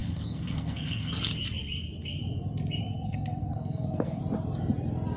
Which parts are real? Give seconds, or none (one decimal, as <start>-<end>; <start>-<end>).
1.1-2.8; 4.2-5.2